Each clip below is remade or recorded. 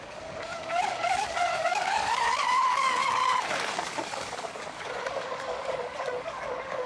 remade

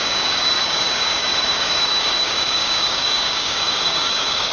remade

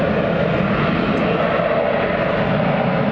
recorded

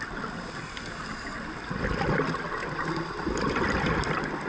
recorded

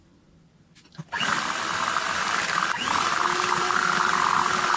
recorded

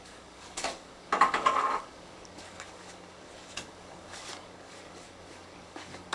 remade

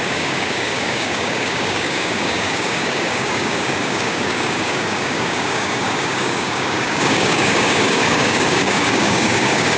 remade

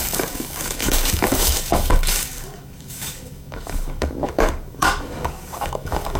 remade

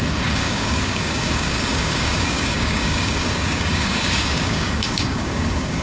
remade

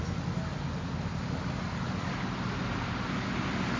recorded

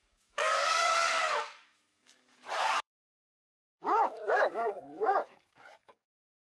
remade